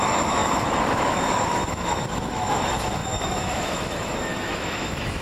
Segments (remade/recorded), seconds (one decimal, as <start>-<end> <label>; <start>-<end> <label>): 0.0-5.2 remade